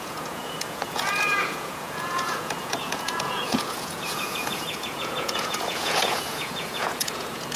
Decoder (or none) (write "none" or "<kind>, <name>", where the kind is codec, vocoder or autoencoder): vocoder, Vocos